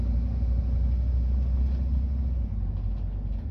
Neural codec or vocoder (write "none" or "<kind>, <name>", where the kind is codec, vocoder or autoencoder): none